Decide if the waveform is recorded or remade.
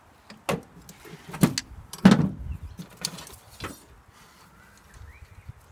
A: recorded